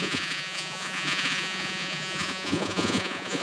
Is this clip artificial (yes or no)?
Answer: yes